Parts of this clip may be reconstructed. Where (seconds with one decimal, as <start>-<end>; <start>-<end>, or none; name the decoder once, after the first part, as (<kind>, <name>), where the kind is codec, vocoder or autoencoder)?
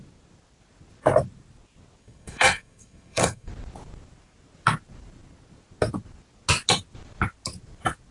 2.0-3.5 (codec, SNAC)